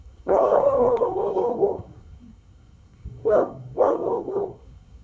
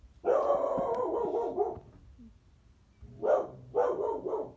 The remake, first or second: first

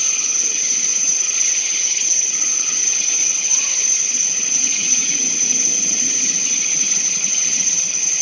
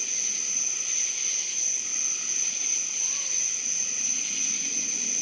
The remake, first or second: first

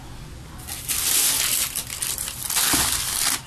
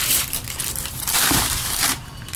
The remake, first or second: second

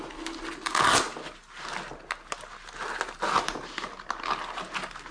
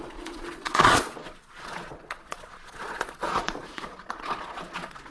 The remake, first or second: second